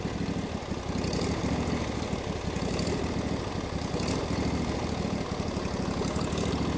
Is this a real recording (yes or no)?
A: yes